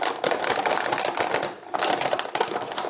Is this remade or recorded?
recorded